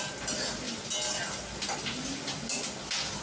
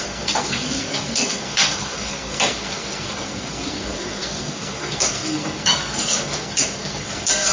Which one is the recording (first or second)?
first